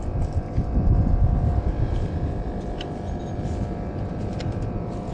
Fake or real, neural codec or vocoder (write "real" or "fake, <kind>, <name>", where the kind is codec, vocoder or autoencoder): fake, vocoder, BigVGAN v2